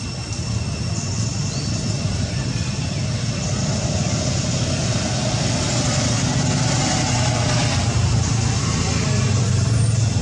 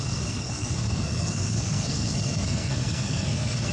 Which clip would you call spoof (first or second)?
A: second